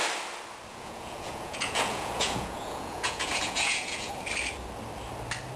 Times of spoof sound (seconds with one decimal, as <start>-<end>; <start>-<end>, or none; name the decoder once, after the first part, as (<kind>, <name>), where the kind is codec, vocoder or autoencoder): 0.7-4.1 (vocoder, Vocos)